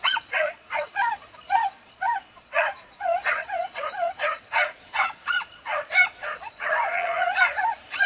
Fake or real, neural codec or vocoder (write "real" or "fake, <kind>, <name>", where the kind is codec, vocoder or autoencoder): fake, vocoder, Vocos